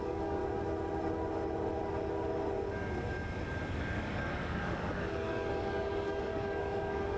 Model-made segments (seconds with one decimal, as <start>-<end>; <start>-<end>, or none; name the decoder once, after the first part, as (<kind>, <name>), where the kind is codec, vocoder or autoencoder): 0.0-0.4 (codec, DAC); 3.7-7.2